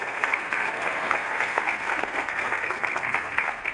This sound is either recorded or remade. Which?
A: remade